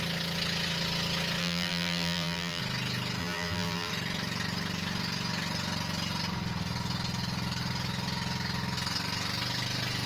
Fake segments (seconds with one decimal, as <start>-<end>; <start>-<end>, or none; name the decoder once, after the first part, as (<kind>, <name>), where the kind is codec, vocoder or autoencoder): 1.4-2.6 (vocoder, BigVGAN v2); 3.2-3.9